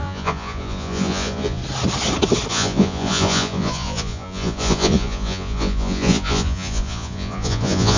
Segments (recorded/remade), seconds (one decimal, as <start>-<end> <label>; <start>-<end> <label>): 0.0-1.6 remade; 1.6-2.5 recorded; 2.5-8.0 remade